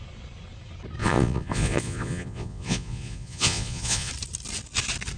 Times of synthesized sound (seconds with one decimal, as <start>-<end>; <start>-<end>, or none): 1.0-4.1